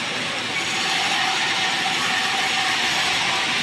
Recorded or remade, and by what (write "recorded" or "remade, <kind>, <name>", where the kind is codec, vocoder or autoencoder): recorded